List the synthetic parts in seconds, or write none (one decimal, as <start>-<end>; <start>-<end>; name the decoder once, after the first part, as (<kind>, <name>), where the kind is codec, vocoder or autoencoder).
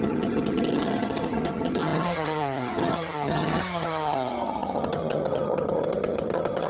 0.0-6.7 (vocoder, HiFi-GAN)